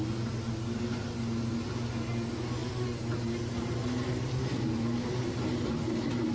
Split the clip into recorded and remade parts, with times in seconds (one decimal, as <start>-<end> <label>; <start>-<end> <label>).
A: 0.0-6.3 recorded